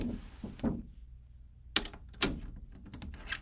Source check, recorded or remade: recorded